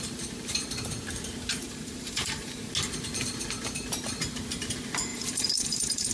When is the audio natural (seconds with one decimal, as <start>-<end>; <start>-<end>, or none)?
0.0-1.6; 2.6-5.1